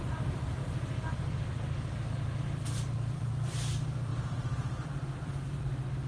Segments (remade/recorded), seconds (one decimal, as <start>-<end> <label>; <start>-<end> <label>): 0.0-0.6 remade; 0.6-2.4 recorded; 2.4-6.1 remade